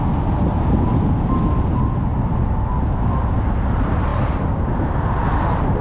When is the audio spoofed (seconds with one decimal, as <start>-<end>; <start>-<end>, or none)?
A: none